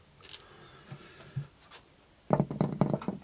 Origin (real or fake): real